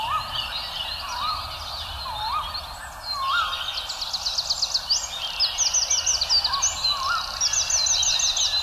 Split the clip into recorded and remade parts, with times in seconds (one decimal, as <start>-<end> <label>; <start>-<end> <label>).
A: 0.0-8.6 recorded